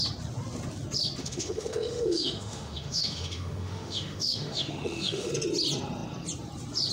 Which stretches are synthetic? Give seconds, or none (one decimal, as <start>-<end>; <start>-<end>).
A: 1.2-5.3